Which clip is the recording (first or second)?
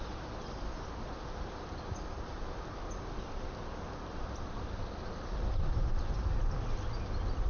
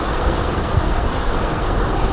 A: first